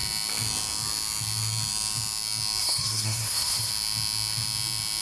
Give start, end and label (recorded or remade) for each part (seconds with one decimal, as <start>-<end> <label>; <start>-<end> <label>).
0.0-2.6 recorded; 2.6-3.7 remade; 3.7-5.0 recorded